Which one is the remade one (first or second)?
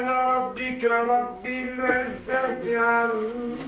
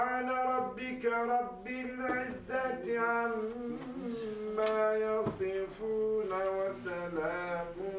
first